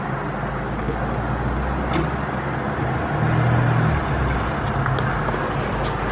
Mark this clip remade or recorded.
recorded